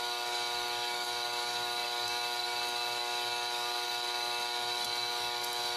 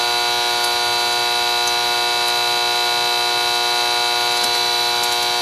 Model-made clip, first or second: first